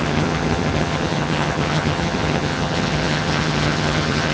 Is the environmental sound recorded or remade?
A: remade